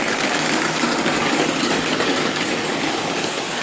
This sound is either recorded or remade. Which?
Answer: remade